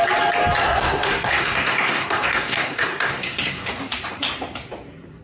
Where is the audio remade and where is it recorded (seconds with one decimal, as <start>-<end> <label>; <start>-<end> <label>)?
0.0-0.6 recorded; 0.6-3.7 remade; 3.7-5.2 recorded